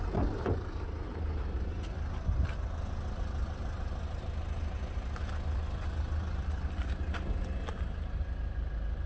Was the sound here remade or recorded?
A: recorded